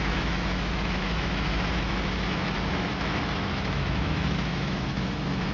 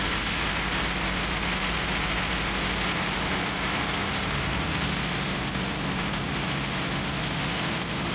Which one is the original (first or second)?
second